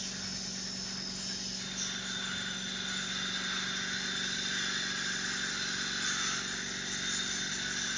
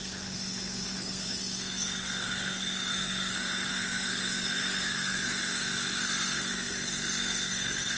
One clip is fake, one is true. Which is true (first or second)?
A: first